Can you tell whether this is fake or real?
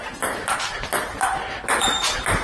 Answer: real